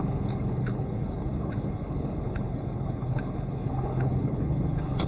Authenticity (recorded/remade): remade